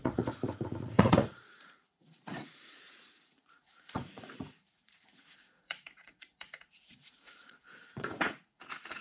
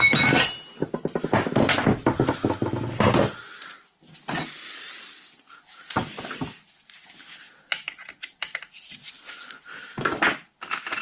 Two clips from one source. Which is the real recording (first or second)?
second